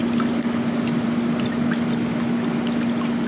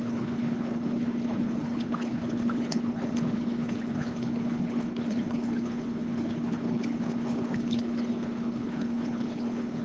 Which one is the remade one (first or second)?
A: second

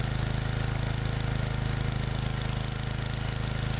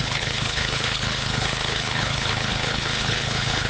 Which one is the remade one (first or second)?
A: second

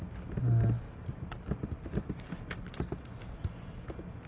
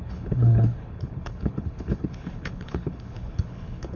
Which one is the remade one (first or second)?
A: second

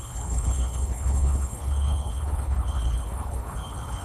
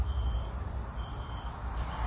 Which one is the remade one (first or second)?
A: first